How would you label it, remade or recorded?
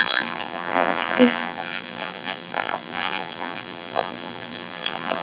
remade